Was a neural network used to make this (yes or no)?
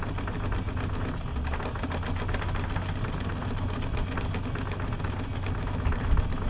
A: no